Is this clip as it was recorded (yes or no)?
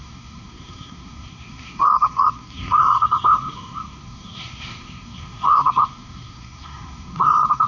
no